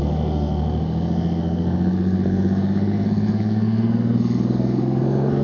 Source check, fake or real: fake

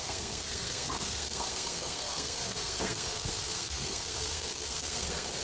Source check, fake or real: fake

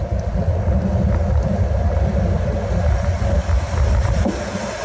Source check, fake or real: real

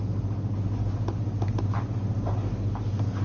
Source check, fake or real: real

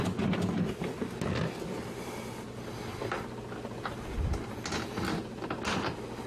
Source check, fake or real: real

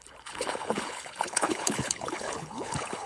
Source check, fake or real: fake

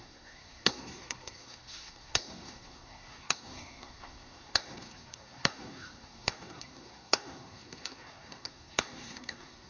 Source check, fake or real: fake